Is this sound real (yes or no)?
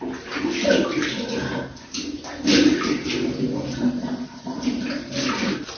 yes